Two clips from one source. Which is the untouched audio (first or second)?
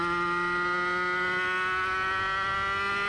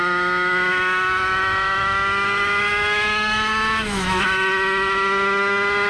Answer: first